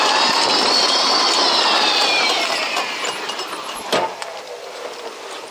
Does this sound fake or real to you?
fake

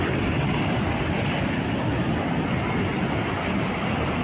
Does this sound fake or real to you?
real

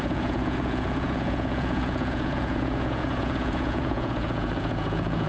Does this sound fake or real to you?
fake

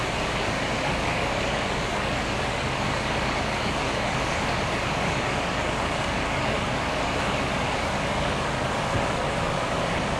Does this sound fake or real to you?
fake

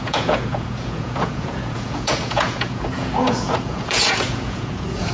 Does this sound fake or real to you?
fake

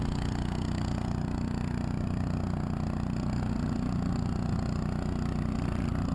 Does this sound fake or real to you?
real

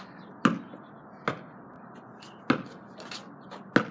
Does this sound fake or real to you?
real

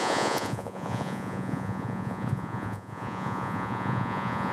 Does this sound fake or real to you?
fake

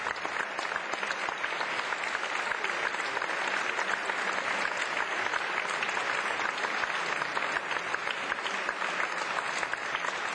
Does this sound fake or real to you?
real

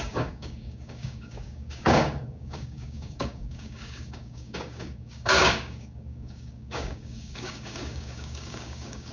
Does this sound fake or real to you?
fake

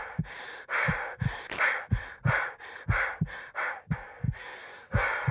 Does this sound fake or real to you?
real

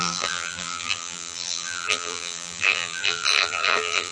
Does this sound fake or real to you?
fake